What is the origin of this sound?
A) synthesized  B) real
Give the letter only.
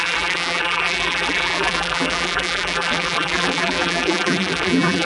A